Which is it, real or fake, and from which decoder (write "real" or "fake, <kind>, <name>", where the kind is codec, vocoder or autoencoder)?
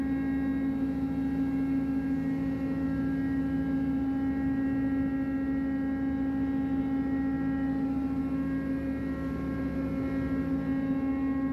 real